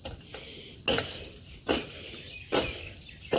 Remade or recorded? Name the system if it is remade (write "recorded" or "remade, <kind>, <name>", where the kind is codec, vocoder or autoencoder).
recorded